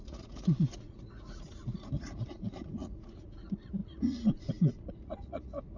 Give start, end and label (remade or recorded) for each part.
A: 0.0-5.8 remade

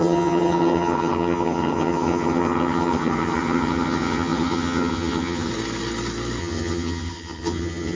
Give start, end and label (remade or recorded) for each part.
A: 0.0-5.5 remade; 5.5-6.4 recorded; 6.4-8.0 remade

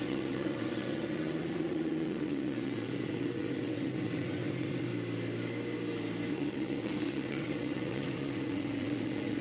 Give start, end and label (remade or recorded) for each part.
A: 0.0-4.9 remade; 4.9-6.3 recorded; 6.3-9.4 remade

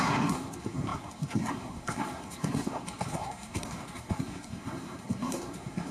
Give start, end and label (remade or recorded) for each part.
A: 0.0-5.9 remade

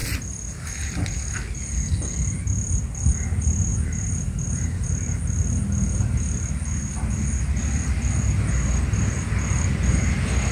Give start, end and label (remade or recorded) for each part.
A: 0.0-0.8 remade; 0.8-3.7 recorded; 3.7-5.2 remade; 5.2-10.5 recorded

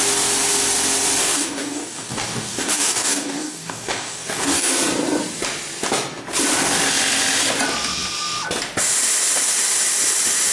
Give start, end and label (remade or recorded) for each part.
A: 0.0-1.2 recorded; 1.2-4.7 remade; 4.7-10.5 recorded

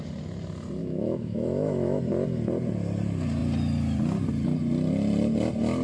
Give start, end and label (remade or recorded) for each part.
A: 0.0-0.8 recorded; 0.8-2.0 remade; 2.0-5.8 recorded